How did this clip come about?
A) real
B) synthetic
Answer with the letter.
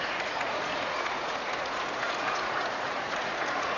B